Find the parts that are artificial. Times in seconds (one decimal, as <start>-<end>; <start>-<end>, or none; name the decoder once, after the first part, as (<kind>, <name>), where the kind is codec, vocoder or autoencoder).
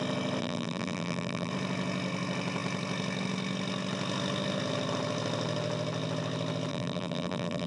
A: 0.4-1.5 (vocoder, BigVGAN v2); 6.7-7.7